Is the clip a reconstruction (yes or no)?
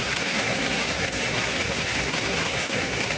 yes